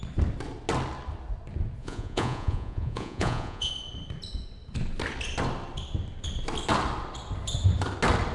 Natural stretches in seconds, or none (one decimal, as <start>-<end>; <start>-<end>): 0.0-1.8; 3.7-8.3